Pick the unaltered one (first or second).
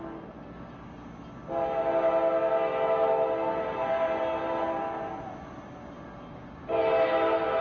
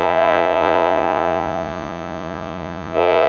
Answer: first